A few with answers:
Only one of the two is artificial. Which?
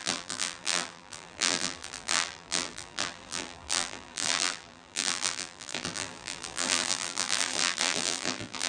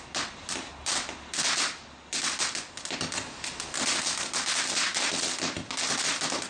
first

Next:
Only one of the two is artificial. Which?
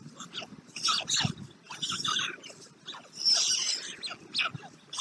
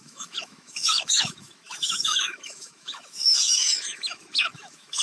second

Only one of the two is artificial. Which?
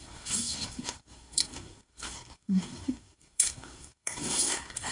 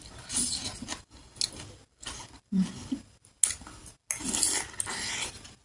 first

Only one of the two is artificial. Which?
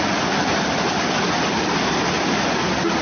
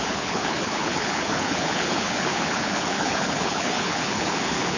second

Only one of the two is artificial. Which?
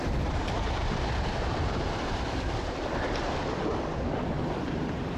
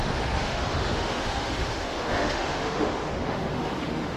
second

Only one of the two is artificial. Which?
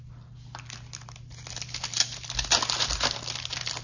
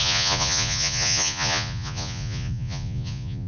second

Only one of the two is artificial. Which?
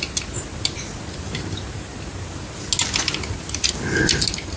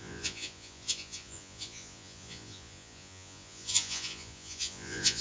second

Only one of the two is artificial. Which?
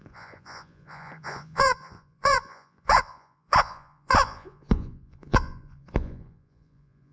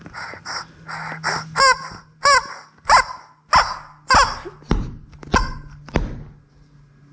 first